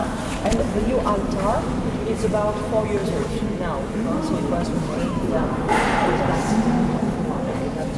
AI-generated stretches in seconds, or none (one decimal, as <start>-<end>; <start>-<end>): none